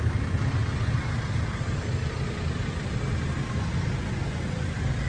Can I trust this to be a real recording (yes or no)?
yes